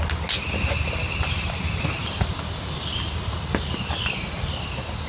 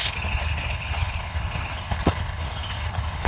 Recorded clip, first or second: first